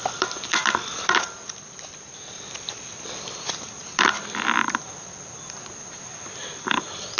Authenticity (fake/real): fake